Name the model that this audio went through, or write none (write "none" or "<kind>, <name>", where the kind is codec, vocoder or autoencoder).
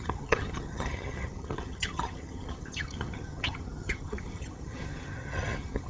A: vocoder, HiFi-GAN